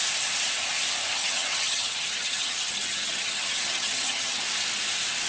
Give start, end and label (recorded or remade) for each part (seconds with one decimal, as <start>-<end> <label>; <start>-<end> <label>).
0.0-1.2 recorded; 1.2-4.4 remade; 4.4-5.3 recorded